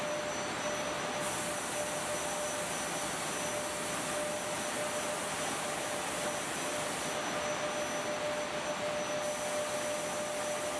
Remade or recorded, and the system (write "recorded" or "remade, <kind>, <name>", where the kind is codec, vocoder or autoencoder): recorded